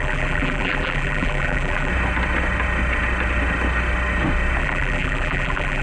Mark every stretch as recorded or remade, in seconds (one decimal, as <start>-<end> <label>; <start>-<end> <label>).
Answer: 0.0-1.9 remade; 1.9-4.6 recorded; 4.6-5.8 remade